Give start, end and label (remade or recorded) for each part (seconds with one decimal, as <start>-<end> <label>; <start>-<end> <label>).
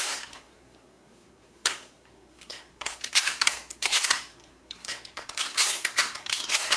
0.0-6.8 remade